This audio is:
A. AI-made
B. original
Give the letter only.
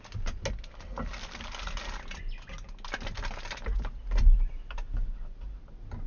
B